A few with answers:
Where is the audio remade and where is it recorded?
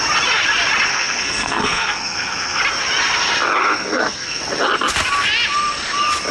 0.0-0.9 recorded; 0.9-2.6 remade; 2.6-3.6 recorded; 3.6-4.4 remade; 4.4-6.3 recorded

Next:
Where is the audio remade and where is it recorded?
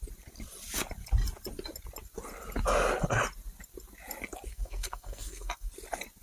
0.0-4.5 recorded; 4.5-5.7 remade; 5.7-6.2 recorded